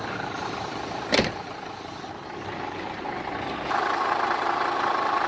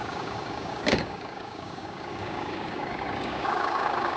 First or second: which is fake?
second